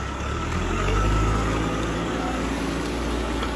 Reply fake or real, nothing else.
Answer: fake